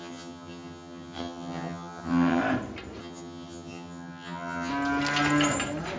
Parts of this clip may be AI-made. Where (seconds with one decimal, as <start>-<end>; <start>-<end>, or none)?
0.0-2.4; 3.0-4.7